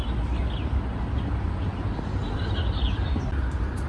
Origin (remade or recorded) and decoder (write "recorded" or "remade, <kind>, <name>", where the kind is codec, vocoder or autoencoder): recorded